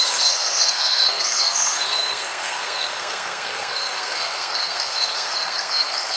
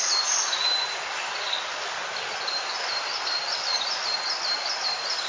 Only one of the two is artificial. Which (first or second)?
first